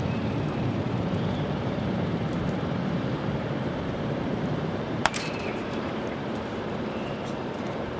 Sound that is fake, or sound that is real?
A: fake